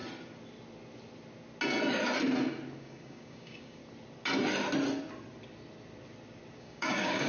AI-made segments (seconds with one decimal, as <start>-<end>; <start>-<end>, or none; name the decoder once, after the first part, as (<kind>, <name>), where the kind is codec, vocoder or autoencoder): 2.8-3.8 (codec, DAC); 6.6-7.3